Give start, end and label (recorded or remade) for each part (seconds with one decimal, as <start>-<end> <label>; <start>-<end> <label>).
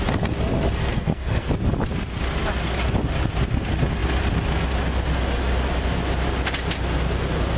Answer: 0.0-0.8 recorded; 0.8-1.5 remade; 1.5-7.6 recorded